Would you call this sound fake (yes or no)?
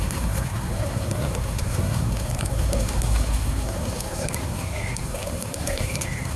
yes